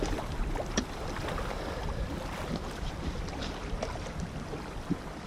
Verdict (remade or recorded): remade